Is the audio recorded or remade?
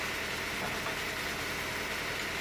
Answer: recorded